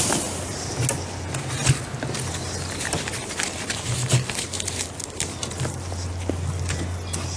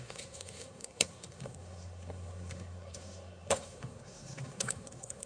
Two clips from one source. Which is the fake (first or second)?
second